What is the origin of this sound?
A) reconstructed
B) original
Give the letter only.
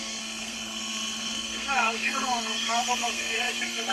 A